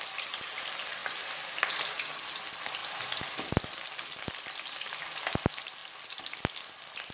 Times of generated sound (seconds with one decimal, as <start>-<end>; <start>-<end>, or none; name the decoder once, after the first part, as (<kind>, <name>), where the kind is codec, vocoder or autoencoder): none